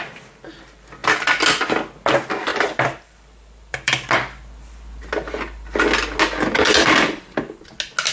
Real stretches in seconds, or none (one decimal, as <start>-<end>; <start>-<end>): 0.0-2.5; 5.0-8.1